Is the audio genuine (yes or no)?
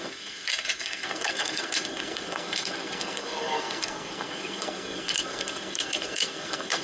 no